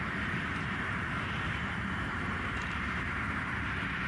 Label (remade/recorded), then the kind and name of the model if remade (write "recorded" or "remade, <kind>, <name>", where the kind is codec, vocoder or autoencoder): remade, vocoder, BigVGAN v2